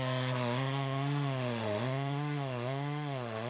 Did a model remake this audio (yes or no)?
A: yes